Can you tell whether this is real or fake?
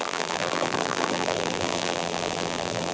fake